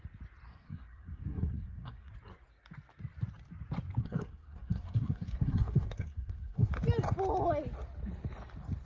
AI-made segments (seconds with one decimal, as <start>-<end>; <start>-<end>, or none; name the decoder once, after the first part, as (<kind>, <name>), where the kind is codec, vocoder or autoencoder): 0.5-2.1 (codec, SNAC); 4.0-6.7